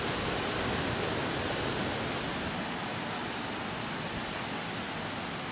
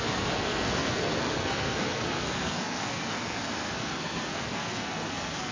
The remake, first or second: second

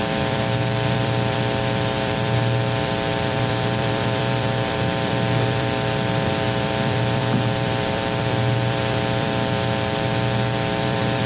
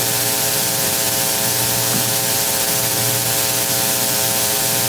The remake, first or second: first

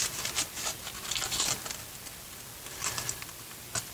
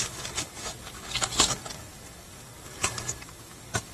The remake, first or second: second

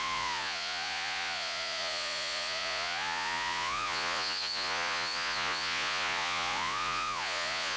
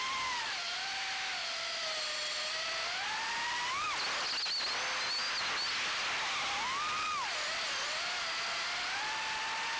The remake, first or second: first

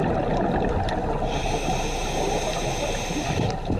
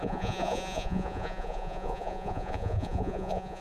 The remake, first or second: second